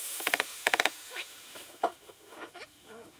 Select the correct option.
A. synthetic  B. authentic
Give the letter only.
A